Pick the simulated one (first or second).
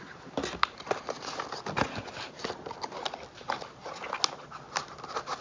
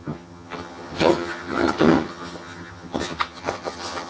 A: second